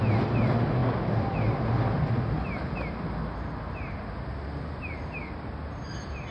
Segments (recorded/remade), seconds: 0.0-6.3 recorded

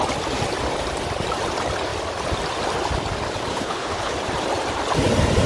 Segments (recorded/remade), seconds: 0.0-3.5 recorded; 3.5-4.1 remade; 4.1-5.5 recorded

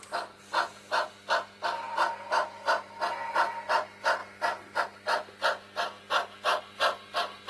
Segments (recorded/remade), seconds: 0.0-7.5 recorded

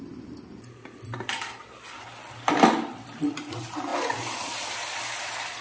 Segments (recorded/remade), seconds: 0.0-5.6 recorded